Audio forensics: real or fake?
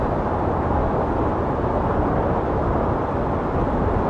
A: real